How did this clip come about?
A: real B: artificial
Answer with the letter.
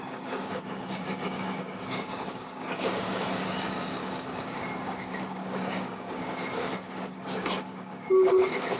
B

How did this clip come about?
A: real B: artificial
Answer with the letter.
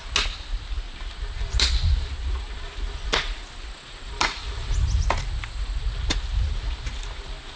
A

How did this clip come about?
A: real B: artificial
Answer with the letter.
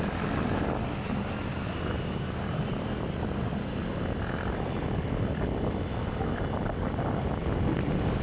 A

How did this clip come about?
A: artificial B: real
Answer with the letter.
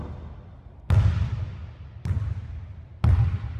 B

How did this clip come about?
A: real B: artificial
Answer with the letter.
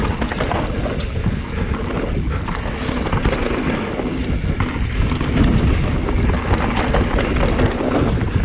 A